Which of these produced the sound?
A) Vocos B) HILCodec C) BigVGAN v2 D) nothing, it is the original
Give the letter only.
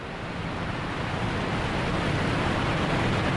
D